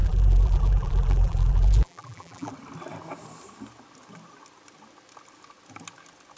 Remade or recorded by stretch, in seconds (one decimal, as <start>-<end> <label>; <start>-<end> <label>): 0.0-2.5 remade; 2.5-6.4 recorded